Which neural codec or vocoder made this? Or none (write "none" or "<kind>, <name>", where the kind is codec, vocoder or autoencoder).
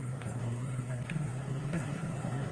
codec, SNAC